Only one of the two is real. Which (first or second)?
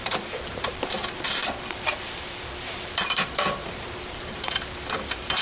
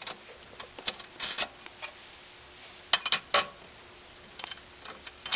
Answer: second